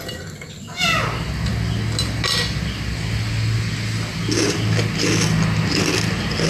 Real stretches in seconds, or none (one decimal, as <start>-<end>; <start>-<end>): 0.0-6.5